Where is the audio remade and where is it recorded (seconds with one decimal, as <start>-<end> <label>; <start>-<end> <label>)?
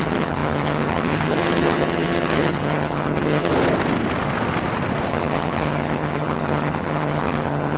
0.0-3.5 remade; 3.5-5.1 recorded; 5.1-7.8 remade